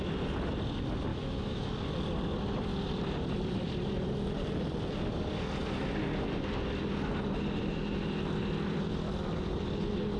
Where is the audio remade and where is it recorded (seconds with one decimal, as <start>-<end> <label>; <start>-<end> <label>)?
0.0-1.1 recorded; 1.1-1.7 remade; 1.7-10.2 recorded